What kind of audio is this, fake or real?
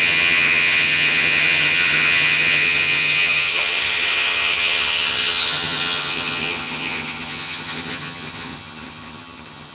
fake